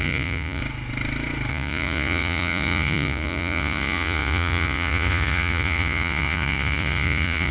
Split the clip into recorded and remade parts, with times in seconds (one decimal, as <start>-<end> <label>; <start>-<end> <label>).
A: 0.0-0.6 remade; 0.6-1.5 recorded; 1.5-7.5 remade